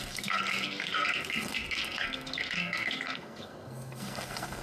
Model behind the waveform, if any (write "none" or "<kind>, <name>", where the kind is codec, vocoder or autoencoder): codec, SNAC